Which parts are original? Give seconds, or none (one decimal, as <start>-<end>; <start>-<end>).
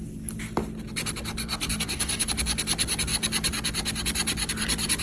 0.0-1.4; 2.3-5.0